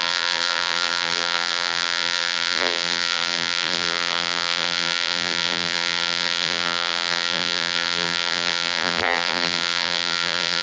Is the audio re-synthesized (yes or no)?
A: yes